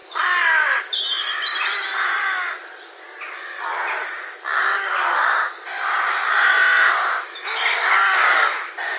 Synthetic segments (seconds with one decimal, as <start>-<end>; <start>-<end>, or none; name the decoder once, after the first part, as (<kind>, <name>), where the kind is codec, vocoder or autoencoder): 0.8-1.9 (vocoder, BigVGAN v2); 5.2-9.0